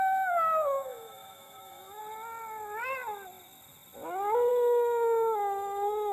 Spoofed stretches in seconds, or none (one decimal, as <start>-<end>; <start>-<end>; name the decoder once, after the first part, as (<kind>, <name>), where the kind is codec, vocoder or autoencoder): 0.0-2.0 (autoencoder, DAC-VAE); 4.5-6.1